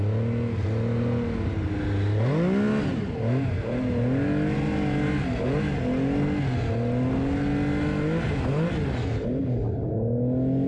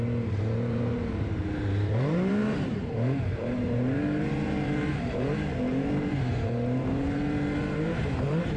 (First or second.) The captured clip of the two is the first